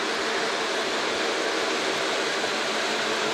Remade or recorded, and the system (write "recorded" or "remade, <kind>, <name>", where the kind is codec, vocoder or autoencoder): recorded